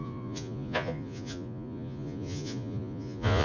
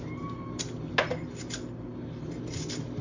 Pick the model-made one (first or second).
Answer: first